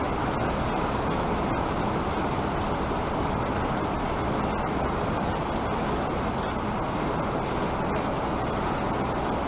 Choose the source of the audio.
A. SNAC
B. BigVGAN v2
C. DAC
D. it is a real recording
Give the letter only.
D